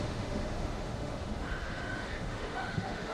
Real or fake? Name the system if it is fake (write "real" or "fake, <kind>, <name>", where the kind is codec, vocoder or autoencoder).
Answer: fake, autoencoder, DAC-VAE